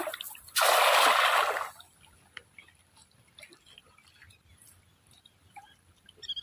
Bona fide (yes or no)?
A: yes